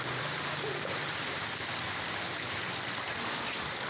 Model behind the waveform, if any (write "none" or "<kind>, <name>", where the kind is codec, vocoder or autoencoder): none